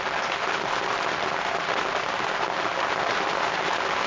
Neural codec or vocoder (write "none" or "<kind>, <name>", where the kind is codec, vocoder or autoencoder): none